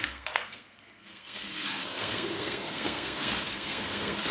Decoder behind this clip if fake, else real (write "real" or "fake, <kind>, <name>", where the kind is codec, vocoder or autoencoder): fake, codec, SNAC